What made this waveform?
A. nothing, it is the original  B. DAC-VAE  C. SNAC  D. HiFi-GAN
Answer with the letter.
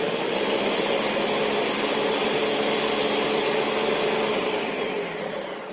A